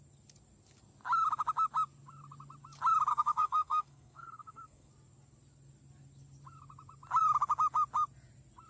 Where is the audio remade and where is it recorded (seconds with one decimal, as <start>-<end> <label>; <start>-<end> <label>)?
0.0-3.1 recorded; 3.1-4.9 remade; 4.9-8.7 recorded